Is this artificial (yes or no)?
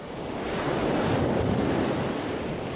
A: no